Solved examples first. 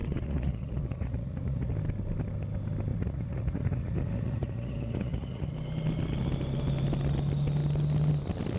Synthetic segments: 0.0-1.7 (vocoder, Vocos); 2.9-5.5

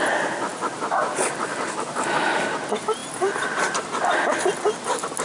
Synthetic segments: none

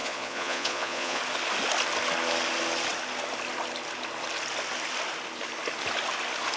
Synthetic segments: 0.0-1.2 (vocoder, Vocos)

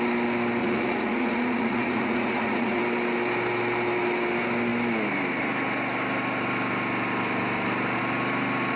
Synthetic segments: 0.6-2.8 (vocoder, Vocos)

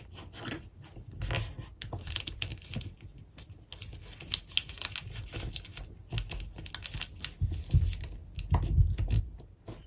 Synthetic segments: none

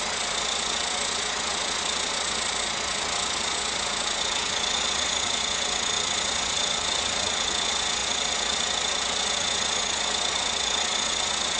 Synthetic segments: 0.0-11.6 (vocoder, Vocos)

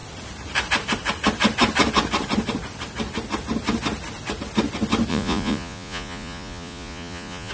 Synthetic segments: 5.1-7.5 (vocoder, Vocos)

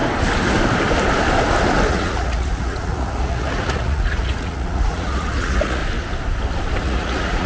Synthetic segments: 1.9-5.8 (vocoder, Vocos); 6.8-7.5